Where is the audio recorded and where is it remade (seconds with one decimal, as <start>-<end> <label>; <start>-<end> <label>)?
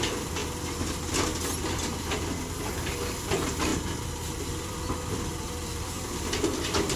0.0-0.4 remade; 0.4-1.7 recorded; 1.7-3.7 remade; 3.7-4.5 recorded; 4.5-7.0 remade